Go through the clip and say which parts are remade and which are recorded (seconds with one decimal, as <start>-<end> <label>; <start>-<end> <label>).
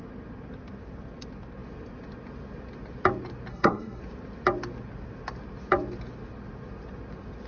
0.0-3.5 recorded; 3.5-4.0 remade; 4.0-7.5 recorded